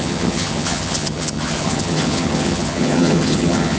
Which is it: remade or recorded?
remade